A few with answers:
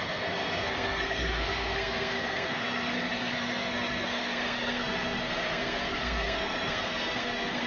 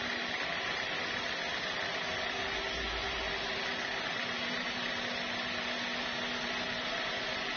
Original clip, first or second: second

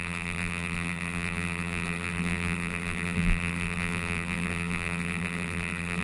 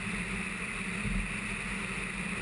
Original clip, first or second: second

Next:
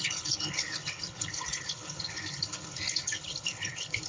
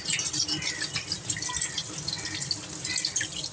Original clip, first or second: second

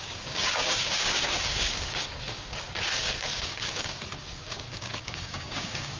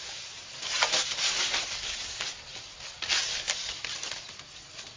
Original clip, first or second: second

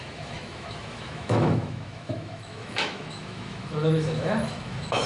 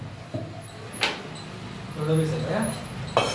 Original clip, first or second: second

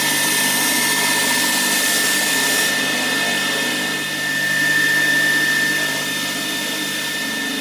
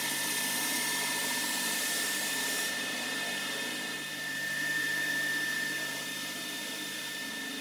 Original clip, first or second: first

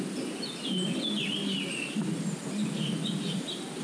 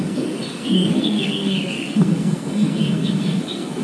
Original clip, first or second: first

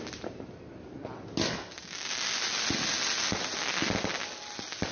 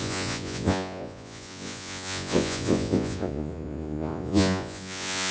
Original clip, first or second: first